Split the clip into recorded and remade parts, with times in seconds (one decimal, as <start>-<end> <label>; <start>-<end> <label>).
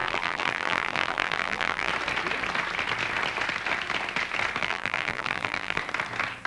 0.0-1.9 remade; 1.9-4.6 recorded; 4.6-5.8 remade; 5.8-6.5 recorded